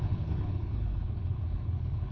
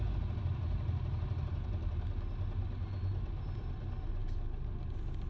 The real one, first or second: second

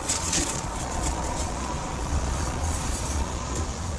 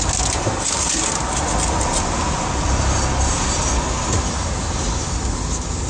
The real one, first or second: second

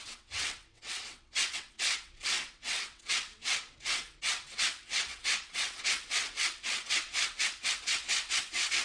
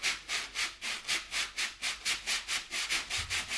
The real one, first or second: second